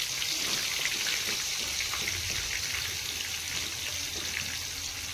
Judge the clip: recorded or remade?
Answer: recorded